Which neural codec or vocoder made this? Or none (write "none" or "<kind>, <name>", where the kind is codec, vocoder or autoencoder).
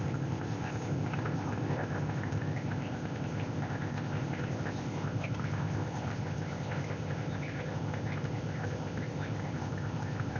codec, ZipCodec